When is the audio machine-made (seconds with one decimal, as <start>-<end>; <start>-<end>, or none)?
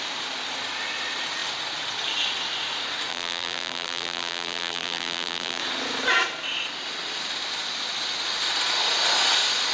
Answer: 3.1-5.6